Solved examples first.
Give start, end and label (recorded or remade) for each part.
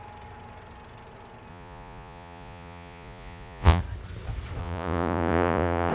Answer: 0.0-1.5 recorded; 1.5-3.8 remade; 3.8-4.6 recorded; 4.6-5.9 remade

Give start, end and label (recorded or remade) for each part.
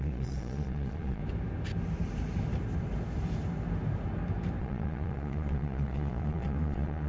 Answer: 0.0-1.2 remade; 1.2-4.6 recorded; 4.6-7.1 remade